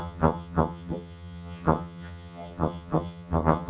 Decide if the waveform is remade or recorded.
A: remade